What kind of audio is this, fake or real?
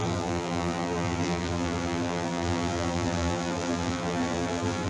fake